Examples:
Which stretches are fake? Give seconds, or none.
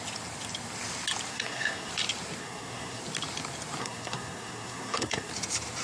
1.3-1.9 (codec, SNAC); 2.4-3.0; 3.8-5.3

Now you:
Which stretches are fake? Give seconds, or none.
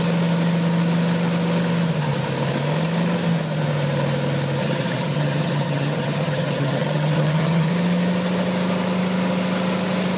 4.6-7.7 (vocoder, HiFi-GAN)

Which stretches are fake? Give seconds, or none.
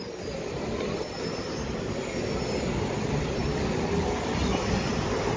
none